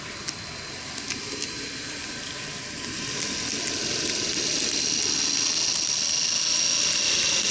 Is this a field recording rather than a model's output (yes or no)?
yes